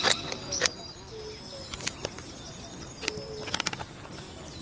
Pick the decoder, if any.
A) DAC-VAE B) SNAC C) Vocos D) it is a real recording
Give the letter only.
D